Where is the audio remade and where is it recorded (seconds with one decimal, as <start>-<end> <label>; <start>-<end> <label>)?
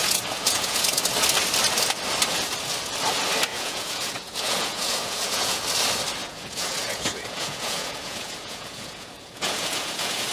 0.0-1.0 remade; 1.0-3.5 recorded; 3.5-5.6 remade; 5.6-6.2 recorded; 6.2-10.3 remade